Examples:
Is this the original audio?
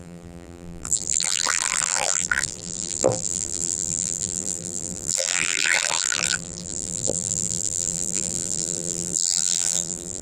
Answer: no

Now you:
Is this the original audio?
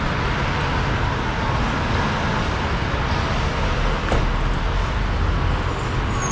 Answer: yes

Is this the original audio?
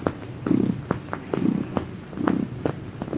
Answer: yes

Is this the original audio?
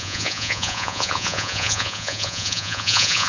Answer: no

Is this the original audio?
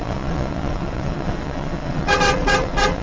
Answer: no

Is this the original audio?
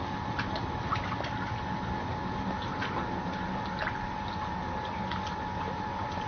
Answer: yes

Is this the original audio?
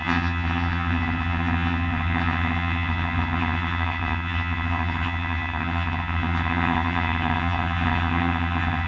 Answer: no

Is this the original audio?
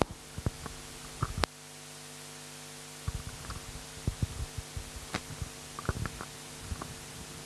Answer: yes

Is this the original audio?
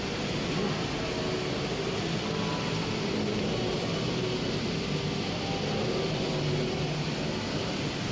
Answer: yes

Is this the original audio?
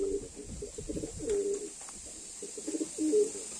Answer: yes